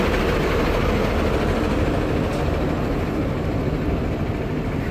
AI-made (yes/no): no